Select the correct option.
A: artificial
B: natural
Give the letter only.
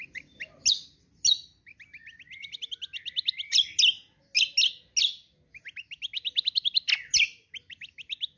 B